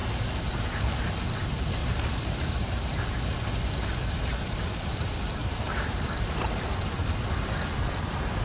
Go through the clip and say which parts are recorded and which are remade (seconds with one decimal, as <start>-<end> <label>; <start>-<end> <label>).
0.0-1.8 recorded; 1.8-3.4 remade; 3.4-5.4 recorded; 5.4-7.0 remade; 7.0-8.4 recorded